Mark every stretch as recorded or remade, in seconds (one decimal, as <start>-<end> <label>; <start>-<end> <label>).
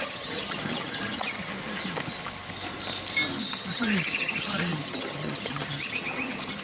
0.0-1.5 remade; 1.5-3.4 recorded; 3.4-6.6 remade